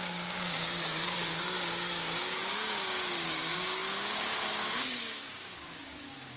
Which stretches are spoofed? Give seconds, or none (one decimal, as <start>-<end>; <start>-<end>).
0.0-6.4